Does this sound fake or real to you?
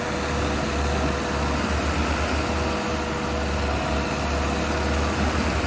real